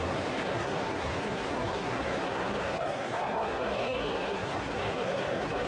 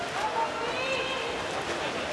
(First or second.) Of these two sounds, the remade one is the first